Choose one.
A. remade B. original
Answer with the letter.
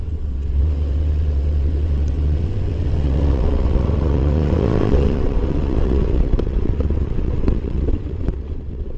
A